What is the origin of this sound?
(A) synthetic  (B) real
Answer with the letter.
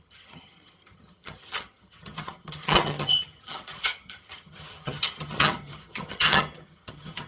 A